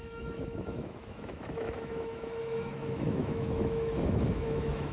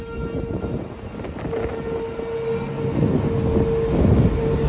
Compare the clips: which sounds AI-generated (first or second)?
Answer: first